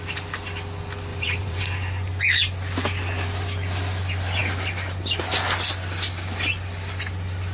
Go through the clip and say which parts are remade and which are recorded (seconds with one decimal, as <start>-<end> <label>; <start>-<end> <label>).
0.0-1.1 recorded; 1.1-1.6 remade; 1.6-7.5 recorded